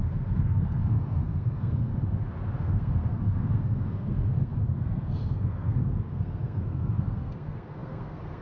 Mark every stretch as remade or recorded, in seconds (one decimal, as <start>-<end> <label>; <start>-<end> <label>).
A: 0.0-1.9 remade; 1.9-2.6 recorded; 2.6-8.4 remade